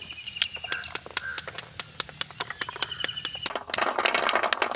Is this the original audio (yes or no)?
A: yes